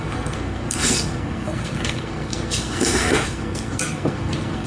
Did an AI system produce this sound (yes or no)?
yes